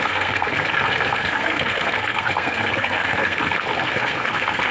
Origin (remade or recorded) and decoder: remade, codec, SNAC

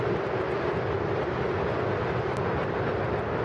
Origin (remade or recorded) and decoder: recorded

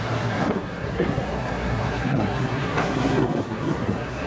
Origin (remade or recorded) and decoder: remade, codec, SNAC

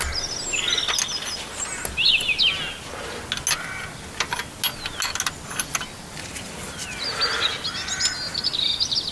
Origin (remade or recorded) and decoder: recorded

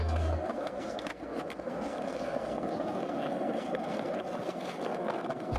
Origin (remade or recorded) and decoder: remade, codec, SNAC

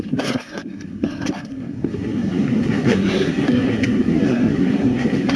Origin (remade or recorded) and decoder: remade, codec, SNAC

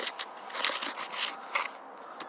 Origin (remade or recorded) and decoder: recorded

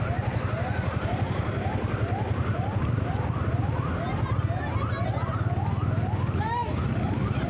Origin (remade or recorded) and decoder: recorded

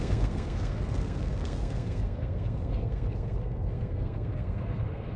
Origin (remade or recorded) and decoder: remade, codec, SNAC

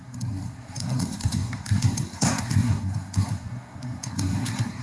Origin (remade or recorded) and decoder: remade, codec, SNAC